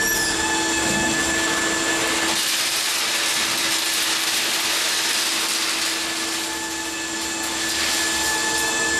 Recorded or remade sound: recorded